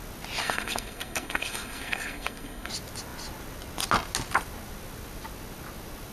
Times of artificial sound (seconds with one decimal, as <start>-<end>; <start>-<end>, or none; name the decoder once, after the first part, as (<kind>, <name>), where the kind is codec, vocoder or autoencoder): 0.4-2.7 (codec, SNAC)